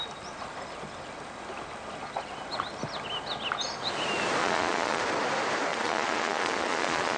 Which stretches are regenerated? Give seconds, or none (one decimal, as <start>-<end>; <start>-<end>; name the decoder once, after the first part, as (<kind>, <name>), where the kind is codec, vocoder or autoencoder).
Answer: 4.4-5.0 (vocoder, Vocos); 5.7-7.2